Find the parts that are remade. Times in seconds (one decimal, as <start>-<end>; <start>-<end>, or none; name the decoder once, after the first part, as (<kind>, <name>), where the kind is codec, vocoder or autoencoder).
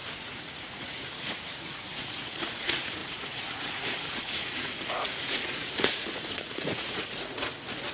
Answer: 0.0-7.9 (vocoder, Vocos)